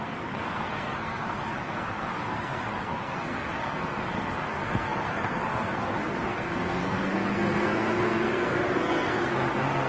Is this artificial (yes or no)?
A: yes